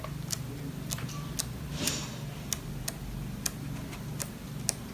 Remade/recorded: recorded